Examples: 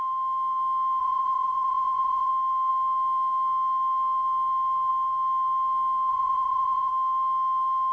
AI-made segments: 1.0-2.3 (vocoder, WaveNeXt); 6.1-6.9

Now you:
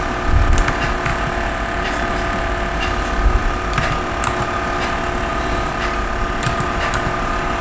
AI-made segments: 1.1-2.5 (vocoder, BigVGAN v2); 3.4-4.1; 5.3-5.8

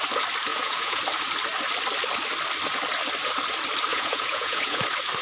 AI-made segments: 0.5-1.0 (vocoder, Vocos); 3.9-4.8